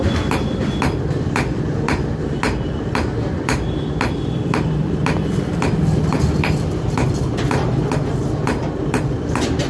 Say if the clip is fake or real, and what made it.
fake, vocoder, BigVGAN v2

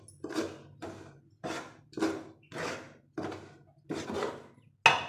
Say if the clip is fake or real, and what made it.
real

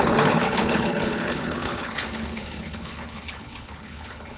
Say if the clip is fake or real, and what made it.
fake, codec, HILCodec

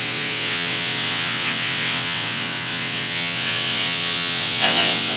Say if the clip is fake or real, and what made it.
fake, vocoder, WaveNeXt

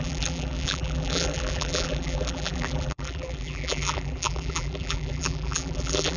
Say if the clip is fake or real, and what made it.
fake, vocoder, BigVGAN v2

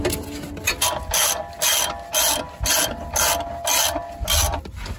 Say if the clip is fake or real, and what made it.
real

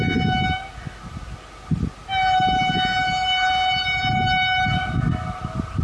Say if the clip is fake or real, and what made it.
real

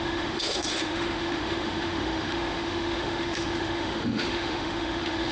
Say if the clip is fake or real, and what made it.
fake, autoencoder, DAC-VAE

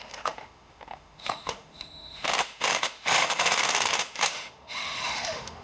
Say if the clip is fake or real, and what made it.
fake, autoencoder, DAC-VAE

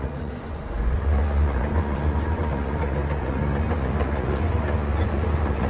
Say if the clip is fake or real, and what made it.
fake, vocoder, Vocos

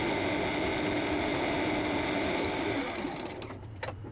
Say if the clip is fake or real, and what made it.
real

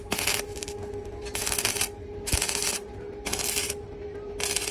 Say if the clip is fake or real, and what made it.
real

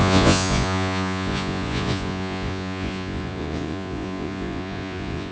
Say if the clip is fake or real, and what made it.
fake, vocoder, Vocos